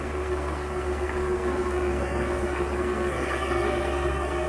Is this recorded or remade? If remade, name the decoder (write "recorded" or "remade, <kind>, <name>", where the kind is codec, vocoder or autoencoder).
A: remade, codec, SNAC